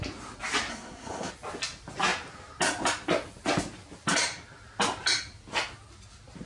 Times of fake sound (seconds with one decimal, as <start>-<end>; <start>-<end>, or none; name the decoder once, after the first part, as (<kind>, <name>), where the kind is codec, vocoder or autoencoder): 0.7-1.3 (codec, SNAC)